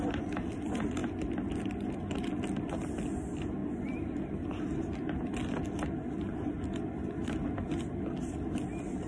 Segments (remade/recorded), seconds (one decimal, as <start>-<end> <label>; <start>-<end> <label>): 0.0-9.1 recorded